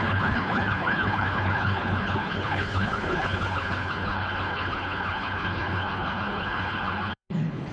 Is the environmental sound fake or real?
fake